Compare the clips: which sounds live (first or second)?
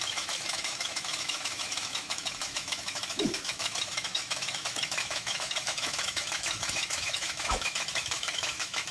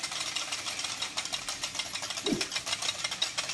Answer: second